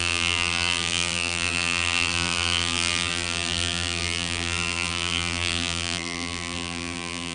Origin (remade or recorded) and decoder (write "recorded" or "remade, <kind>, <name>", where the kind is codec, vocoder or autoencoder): remade, vocoder, BigVGAN v2